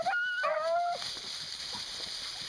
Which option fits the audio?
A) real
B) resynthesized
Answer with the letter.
A